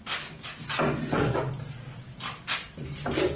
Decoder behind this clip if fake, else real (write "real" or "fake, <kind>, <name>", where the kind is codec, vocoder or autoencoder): real